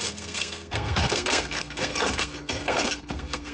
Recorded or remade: remade